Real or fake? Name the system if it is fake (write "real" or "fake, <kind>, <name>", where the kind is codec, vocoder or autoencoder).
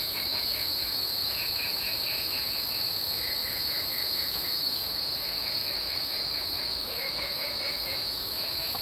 fake, autoencoder, DAC-VAE